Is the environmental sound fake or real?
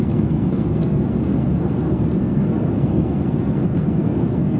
fake